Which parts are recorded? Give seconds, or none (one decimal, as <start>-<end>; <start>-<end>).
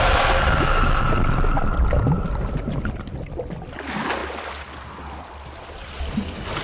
0.0-6.6